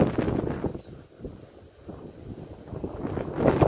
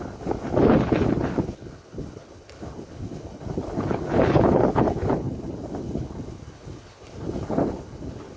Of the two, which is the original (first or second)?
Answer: first